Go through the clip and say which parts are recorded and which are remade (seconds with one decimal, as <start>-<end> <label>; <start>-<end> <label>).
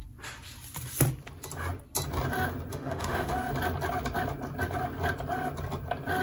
0.0-2.7 recorded; 2.7-3.3 remade; 3.3-6.2 recorded